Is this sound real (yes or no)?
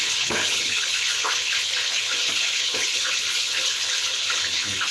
no